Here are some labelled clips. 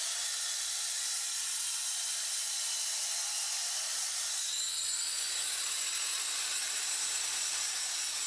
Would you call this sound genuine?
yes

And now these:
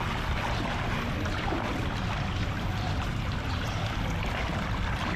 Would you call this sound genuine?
yes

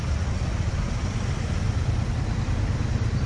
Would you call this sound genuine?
yes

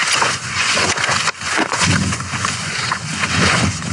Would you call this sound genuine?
no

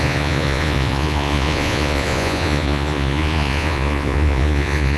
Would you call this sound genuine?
no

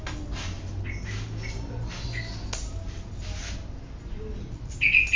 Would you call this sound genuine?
yes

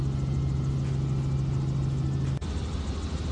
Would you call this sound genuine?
yes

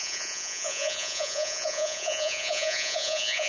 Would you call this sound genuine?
no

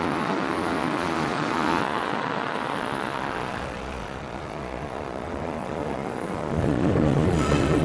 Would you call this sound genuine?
no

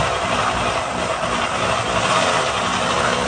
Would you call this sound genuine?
yes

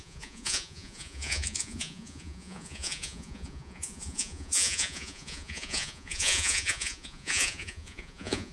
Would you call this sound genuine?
no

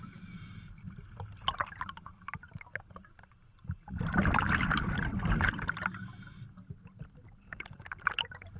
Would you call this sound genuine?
yes